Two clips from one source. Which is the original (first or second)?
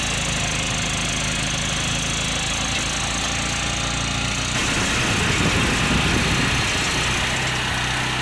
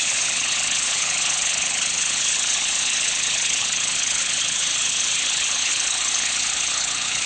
first